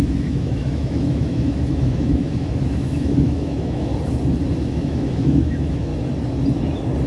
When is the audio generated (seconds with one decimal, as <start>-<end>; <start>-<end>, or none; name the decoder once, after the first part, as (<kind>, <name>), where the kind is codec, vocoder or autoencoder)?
0.0-3.9 (autoencoder, DAC-VAE); 4.5-5.9